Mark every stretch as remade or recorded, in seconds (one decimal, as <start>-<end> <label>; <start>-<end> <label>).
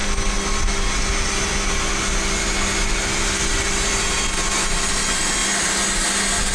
0.0-6.5 recorded